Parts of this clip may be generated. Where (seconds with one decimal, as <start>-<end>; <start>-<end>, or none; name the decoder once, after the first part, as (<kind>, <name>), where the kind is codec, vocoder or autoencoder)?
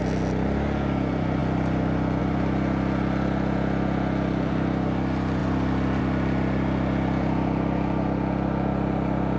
none